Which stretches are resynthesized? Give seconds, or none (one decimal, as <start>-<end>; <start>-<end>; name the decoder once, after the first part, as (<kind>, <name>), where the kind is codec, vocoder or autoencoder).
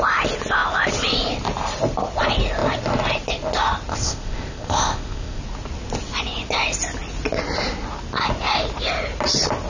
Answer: 3.9-5.4 (codec, ZipCodec)